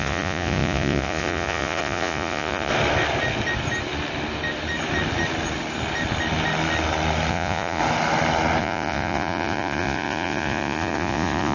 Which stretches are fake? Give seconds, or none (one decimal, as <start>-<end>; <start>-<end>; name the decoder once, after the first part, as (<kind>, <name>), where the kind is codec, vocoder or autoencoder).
0.0-2.7 (vocoder, Vocos); 7.3-7.8; 8.6-11.5